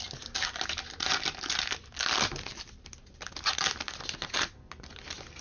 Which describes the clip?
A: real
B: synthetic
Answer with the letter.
A